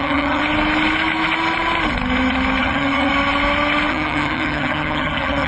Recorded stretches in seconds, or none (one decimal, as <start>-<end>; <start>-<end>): 0.4-2.6; 3.1-3.9